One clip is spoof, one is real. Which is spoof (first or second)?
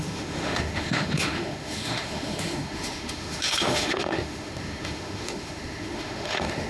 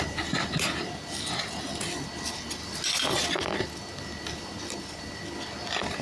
first